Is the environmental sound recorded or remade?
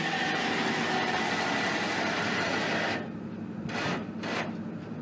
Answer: recorded